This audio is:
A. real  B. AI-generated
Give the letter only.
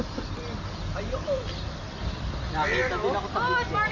A